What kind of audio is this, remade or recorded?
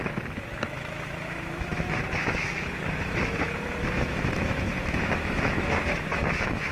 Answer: remade